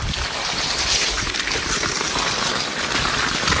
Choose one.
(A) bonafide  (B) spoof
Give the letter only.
A